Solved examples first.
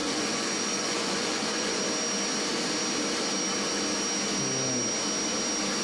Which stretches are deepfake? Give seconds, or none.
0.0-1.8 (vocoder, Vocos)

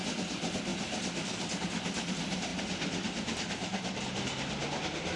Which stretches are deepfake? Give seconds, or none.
none